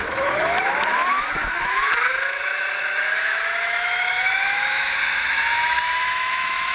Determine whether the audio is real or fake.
fake